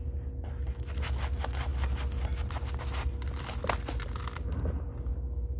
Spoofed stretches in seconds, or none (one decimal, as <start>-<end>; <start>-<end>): none